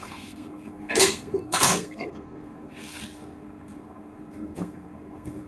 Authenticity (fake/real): fake